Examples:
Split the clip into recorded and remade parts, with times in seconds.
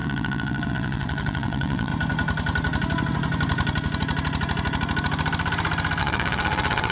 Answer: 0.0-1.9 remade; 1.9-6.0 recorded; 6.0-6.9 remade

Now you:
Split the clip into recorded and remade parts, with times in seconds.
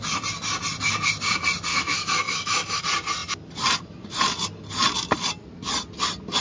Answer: 0.0-1.7 recorded; 1.7-2.8 remade; 2.8-6.4 recorded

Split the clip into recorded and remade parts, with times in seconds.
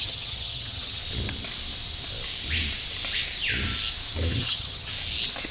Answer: 0.0-1.0 remade; 1.0-4.3 recorded; 4.3-4.9 remade; 4.9-5.5 recorded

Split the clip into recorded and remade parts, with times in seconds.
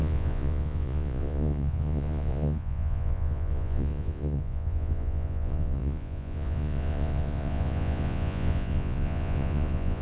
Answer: 0.0-10.0 remade